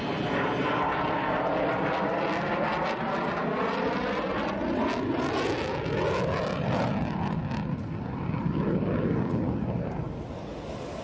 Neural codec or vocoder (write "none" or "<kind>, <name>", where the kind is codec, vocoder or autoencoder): none